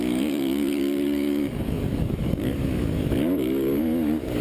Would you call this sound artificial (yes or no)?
yes